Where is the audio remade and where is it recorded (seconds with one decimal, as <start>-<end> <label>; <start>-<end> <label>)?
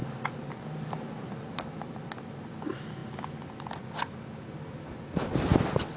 0.0-6.0 recorded